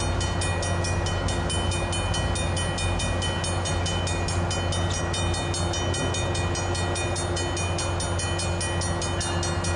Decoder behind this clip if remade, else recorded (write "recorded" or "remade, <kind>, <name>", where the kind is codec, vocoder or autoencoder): recorded